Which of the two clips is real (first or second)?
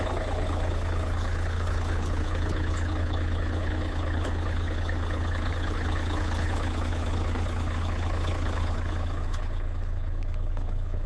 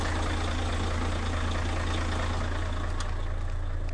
second